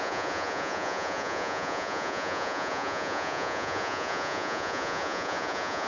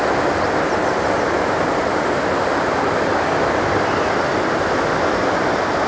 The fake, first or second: first